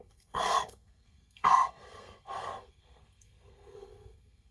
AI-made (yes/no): yes